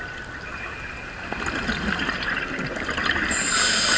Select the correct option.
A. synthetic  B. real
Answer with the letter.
B